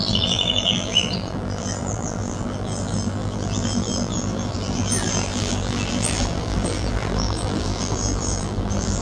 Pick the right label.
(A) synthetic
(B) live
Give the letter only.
A